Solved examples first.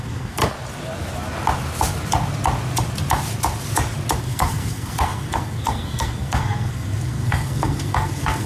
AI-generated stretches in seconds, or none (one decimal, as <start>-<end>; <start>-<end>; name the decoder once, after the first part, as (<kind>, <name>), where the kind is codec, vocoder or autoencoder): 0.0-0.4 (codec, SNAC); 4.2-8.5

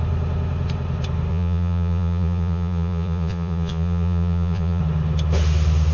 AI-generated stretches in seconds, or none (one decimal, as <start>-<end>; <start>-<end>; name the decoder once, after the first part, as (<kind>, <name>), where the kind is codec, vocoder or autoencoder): 1.3-4.8 (vocoder, Vocos)

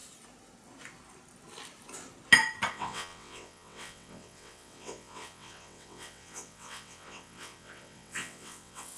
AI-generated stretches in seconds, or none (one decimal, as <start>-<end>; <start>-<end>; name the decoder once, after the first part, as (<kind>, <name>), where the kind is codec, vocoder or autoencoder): 2.7-9.0 (vocoder, WaveNeXt)

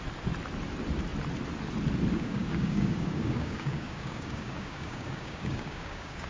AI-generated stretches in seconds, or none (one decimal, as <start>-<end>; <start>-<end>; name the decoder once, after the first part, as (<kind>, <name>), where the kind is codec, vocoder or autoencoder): 2.1-6.3 (codec, DAC)

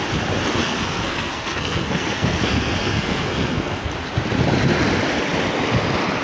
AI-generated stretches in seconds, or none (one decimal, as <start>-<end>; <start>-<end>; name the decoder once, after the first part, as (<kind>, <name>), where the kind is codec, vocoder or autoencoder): 0.6-3.9 (codec, SNAC)

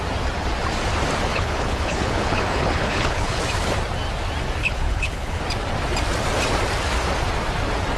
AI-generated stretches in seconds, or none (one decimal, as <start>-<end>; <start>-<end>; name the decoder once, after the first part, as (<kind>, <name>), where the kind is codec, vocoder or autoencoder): 1.3-3.4 (codec, HILCodec); 4.6-5.4